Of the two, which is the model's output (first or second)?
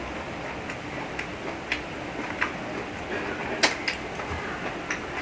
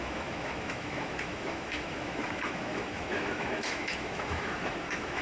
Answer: second